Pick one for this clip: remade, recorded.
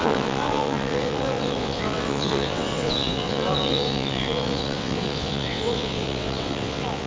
remade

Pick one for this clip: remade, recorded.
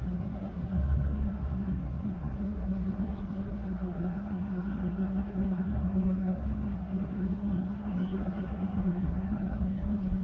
remade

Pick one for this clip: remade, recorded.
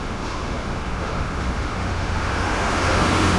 remade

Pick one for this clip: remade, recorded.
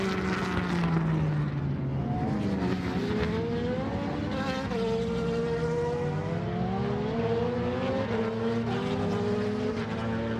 recorded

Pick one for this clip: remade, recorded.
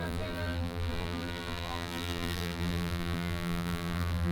remade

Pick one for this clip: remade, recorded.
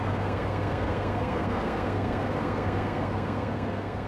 remade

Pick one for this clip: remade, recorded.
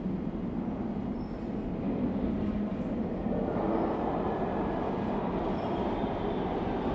recorded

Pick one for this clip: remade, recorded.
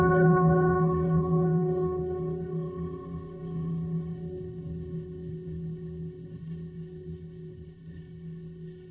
remade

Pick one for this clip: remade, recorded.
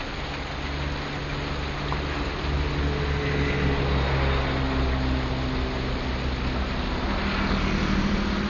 recorded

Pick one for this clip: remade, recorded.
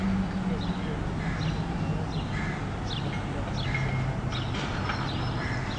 recorded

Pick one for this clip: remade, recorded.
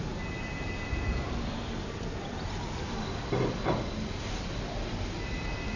recorded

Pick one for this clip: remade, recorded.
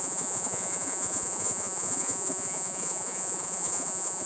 remade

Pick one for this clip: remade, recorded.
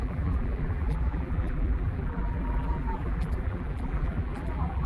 remade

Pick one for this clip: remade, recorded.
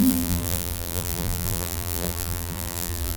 remade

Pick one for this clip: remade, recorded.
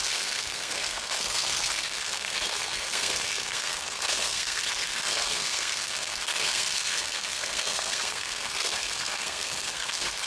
remade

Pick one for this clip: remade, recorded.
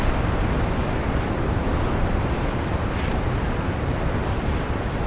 recorded